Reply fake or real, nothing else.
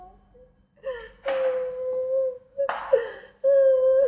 real